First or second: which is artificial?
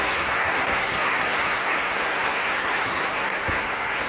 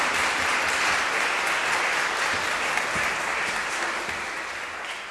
first